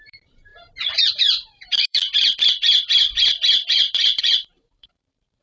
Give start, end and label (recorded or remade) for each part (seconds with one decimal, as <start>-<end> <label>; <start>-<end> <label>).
0.0-0.5 remade; 0.5-1.1 recorded; 1.1-2.0 remade; 2.0-3.5 recorded; 3.5-5.4 remade